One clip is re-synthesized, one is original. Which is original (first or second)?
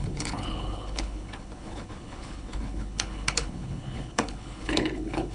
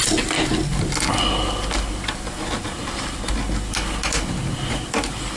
second